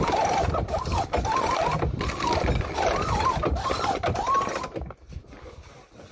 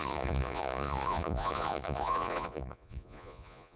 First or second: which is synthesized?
second